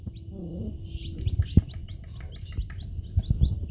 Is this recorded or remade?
recorded